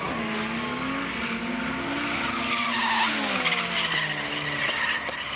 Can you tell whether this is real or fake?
real